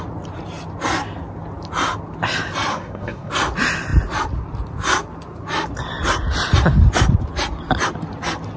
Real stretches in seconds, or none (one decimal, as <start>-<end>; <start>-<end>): 0.0-2.7; 3.3-8.6